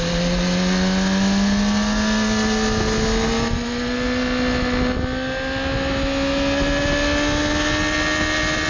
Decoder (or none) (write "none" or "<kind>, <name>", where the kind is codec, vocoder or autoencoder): none